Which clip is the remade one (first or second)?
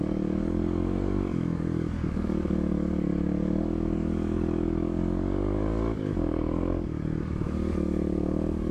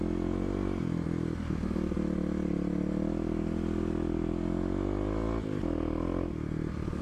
first